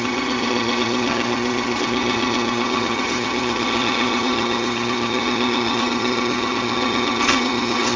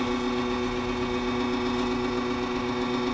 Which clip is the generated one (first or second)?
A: first